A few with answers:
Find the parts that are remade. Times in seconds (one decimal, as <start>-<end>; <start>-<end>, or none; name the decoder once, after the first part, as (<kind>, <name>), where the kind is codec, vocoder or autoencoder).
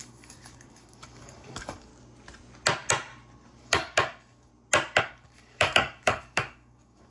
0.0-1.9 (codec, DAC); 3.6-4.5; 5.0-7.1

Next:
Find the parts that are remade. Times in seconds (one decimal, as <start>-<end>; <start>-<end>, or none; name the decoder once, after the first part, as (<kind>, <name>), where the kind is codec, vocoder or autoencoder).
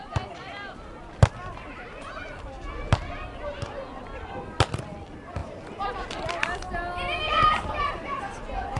none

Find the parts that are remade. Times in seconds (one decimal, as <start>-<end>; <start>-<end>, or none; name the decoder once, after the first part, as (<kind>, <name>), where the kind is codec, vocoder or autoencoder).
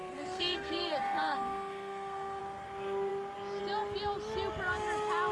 0.0-2.4 (codec, SNAC)